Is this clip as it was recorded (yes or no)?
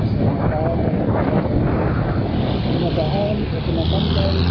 yes